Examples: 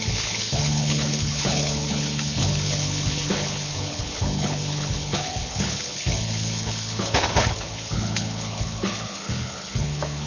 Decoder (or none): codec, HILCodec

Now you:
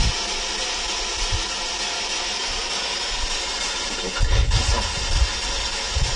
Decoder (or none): none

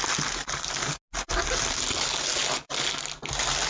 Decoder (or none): none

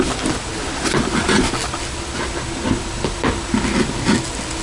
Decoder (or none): none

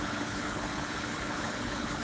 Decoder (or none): codec, HILCodec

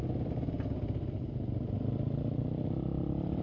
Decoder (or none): none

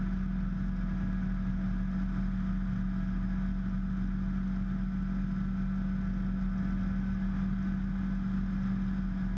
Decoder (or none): none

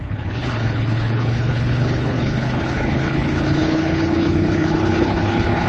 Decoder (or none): codec, HILCodec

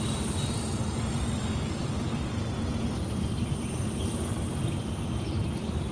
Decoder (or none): none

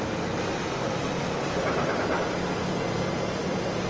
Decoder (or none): none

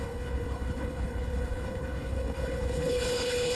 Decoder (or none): codec, HILCodec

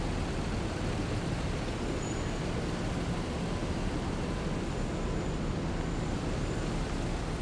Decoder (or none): none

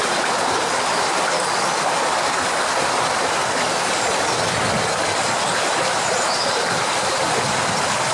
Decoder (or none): none